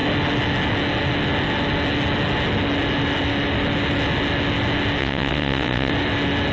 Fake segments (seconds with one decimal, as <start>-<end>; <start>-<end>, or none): 5.0-5.9